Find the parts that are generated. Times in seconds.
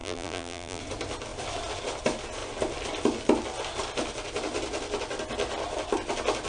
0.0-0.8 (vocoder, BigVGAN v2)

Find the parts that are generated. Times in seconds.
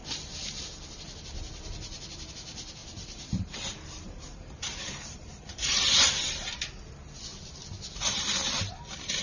2.8-6.1 (vocoder, BigVGAN v2)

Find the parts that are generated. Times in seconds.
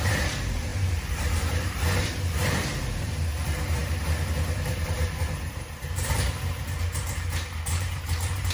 0.0-8.5 (vocoder, BigVGAN v2)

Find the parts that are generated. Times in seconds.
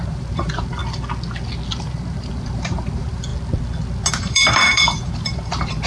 0.0-0.8 (vocoder, BigVGAN v2); 1.7-3.3; 4.1-5.9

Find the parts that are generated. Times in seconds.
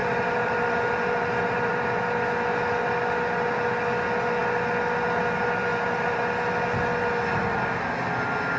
0.0-1.7 (vocoder, BigVGAN v2); 5.7-6.2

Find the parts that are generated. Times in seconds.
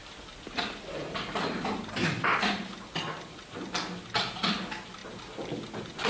0.0-5.0 (vocoder, BigVGAN v2)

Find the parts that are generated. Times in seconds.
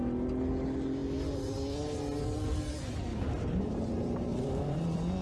3.1-3.9 (vocoder, BigVGAN v2); 4.3-4.8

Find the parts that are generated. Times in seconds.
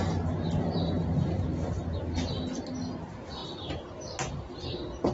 none